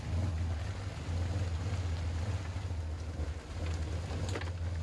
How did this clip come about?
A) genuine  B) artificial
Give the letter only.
A